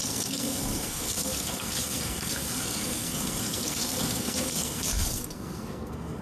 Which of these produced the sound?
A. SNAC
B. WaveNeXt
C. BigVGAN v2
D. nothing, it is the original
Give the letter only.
A